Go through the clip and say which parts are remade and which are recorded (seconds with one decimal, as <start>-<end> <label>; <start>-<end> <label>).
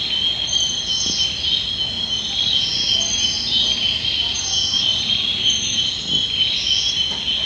0.0-7.5 recorded